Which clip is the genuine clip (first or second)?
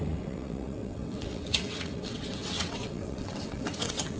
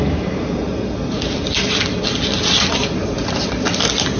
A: second